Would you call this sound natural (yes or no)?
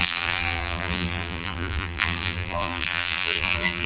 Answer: no